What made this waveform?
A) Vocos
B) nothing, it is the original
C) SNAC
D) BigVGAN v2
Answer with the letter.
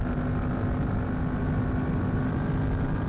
B